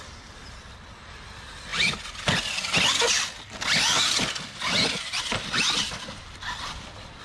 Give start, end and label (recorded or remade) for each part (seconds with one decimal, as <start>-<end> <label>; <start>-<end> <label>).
0.0-7.2 recorded